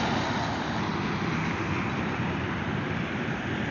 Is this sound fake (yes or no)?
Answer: no